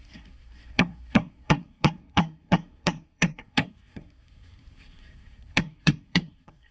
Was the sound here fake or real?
fake